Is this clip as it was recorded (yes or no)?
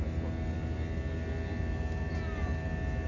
yes